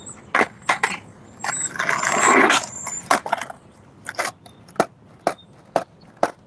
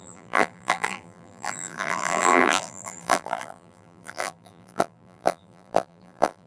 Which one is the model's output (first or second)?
second